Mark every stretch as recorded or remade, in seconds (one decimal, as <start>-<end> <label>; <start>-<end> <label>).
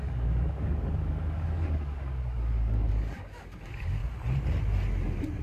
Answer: 0.0-4.0 remade; 4.0-5.4 recorded